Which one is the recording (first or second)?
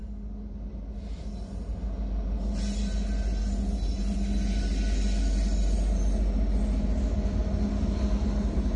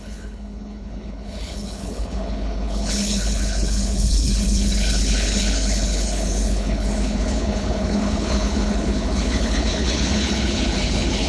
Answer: first